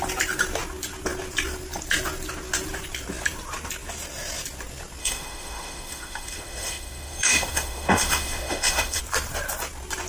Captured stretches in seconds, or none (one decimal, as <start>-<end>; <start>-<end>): 0.0-5.0; 9.0-10.1